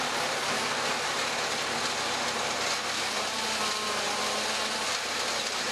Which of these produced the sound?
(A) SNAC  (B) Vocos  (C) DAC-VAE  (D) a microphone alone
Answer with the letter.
D